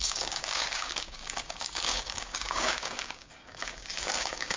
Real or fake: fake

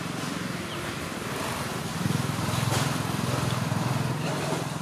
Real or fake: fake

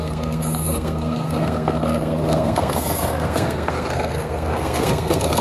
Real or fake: fake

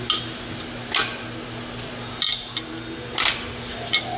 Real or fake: real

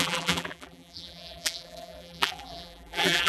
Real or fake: fake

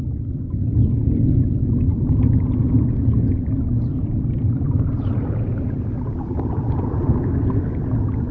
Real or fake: real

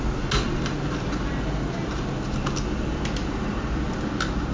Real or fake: real